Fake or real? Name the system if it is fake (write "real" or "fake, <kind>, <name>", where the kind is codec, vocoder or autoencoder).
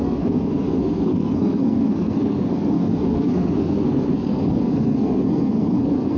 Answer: fake, codec, SNAC